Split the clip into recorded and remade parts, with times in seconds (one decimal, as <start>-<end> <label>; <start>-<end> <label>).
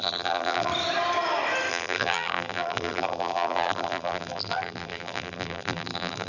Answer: 0.0-0.7 remade; 0.7-1.7 recorded; 1.7-6.3 remade